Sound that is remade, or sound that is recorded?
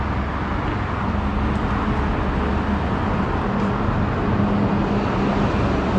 recorded